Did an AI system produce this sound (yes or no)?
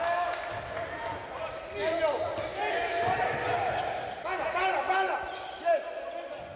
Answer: no